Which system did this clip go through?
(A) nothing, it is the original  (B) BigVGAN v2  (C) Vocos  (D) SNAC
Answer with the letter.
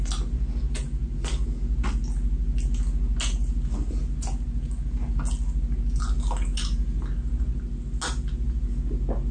A